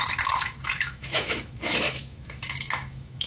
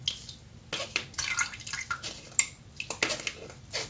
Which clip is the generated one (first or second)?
first